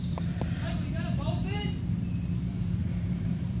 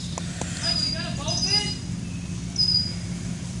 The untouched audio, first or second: second